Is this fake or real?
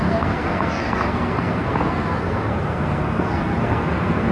fake